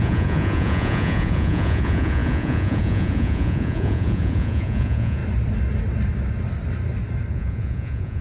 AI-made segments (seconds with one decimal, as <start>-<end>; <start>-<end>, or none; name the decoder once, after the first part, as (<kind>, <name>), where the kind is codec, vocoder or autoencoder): 0.0-5.2 (vocoder, Vocos); 7.3-8.2